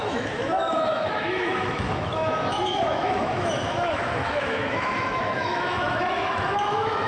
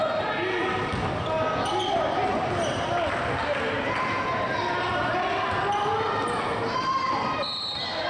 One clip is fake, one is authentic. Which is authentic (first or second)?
second